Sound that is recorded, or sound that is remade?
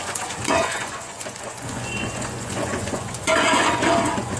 remade